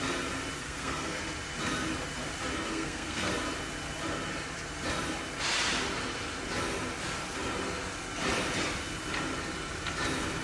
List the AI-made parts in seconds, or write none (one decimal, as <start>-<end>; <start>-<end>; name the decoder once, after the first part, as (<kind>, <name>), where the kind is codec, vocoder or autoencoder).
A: 0.6-1.2 (codec, SNAC); 2.7-3.3